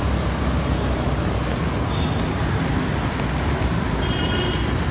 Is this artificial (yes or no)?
no